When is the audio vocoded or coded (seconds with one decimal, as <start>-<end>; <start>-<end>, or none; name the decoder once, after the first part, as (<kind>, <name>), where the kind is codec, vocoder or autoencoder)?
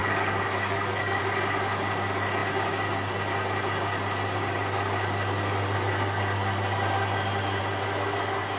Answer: 0.0-1.2 (codec, DAC)